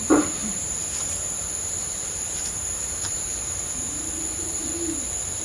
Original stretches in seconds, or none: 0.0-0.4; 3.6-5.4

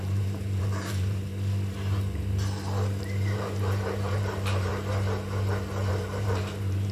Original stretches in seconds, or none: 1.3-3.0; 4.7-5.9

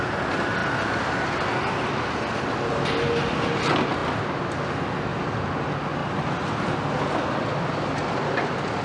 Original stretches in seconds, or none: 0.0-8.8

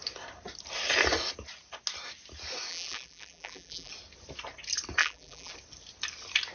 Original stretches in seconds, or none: 0.0-2.7; 3.9-5.0; 5.5-6.5

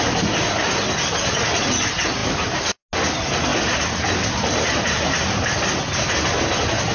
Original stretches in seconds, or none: 0.0-3.5; 4.5-6.9